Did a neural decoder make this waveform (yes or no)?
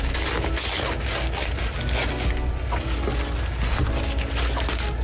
no